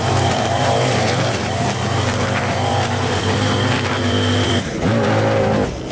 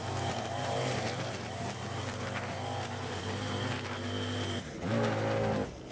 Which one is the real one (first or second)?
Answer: second